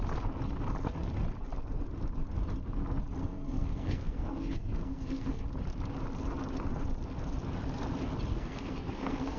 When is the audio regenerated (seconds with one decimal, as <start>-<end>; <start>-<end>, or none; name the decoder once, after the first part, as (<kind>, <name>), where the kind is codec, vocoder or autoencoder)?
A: 3.2-5.4 (codec, SNAC); 8.3-9.4